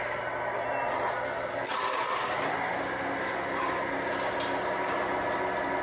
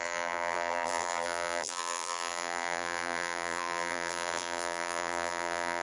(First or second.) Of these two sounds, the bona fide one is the first